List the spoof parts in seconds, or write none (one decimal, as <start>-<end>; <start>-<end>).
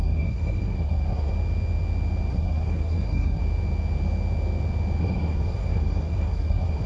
0.0-1.3; 2.3-3.4; 5.0-6.9